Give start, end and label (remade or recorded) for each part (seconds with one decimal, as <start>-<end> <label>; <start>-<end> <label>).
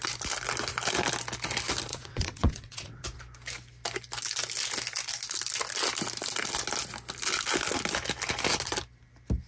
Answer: 0.0-1.9 recorded; 1.9-3.0 remade; 3.0-9.5 recorded